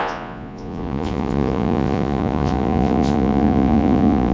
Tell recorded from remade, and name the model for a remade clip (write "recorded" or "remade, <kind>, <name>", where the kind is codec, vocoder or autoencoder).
remade, vocoder, Vocos